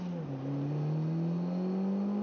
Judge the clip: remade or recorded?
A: recorded